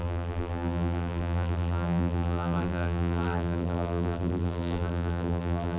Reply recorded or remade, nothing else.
remade